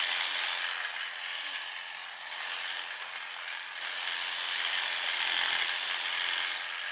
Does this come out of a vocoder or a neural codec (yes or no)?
no